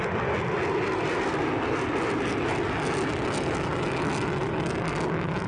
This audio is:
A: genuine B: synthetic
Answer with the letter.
A